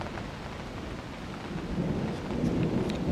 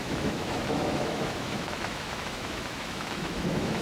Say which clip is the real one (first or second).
first